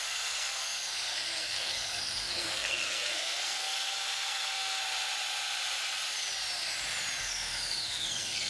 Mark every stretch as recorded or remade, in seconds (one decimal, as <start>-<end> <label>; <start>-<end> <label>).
0.0-4.8 remade; 4.8-7.2 recorded; 7.2-8.5 remade